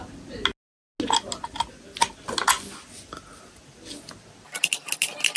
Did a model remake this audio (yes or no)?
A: no